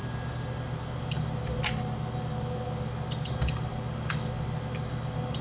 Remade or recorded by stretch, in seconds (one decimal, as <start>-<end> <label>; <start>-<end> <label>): 0.0-5.4 recorded